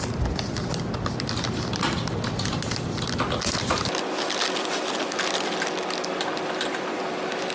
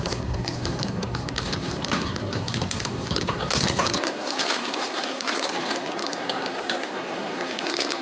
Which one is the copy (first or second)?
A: second